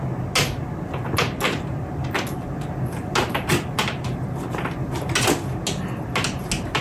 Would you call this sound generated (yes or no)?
no